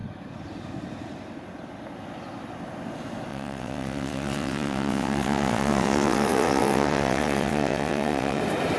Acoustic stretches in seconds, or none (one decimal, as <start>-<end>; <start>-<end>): 0.0-3.3; 8.4-8.8